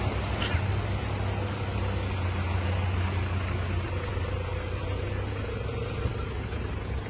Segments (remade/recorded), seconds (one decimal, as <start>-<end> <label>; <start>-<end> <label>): 0.0-7.1 recorded